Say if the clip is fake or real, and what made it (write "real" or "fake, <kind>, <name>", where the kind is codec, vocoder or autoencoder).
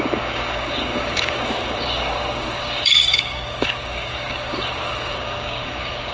fake, codec, DAC